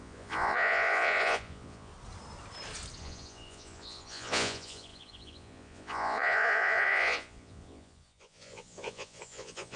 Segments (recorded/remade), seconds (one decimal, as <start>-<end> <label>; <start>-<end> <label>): 0.0-1.9 remade; 1.9-3.0 recorded; 3.0-9.8 remade